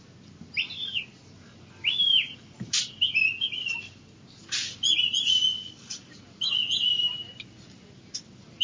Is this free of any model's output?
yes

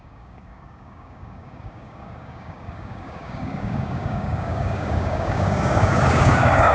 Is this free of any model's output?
no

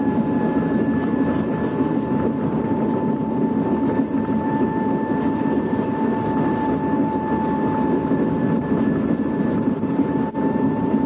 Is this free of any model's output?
yes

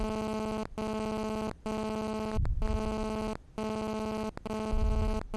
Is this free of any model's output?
yes